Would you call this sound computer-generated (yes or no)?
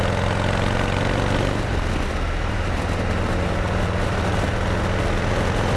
no